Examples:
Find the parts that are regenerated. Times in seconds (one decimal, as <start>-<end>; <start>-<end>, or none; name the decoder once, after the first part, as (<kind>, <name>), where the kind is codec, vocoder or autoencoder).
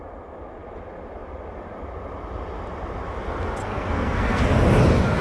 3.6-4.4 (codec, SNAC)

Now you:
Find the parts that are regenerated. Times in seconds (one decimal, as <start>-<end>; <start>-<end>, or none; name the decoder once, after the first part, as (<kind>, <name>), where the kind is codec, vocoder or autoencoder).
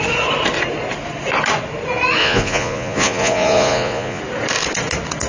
2.2-4.2 (vocoder, Vocos)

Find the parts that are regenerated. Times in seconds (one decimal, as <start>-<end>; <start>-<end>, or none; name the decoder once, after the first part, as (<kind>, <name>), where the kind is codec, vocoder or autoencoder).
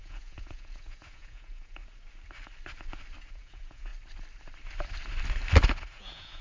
0.0-1.8 (vocoder, Vocos); 3.3-3.9; 5.9-6.4